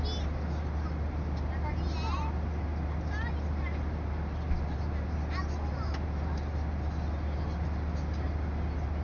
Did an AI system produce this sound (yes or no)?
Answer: no